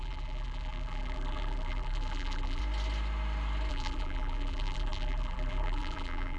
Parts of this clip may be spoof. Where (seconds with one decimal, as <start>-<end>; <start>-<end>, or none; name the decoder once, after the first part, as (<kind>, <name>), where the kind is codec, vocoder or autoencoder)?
0.0-2.6 (vocoder, BigVGAN v2); 3.7-6.4